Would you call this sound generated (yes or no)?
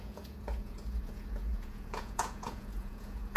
yes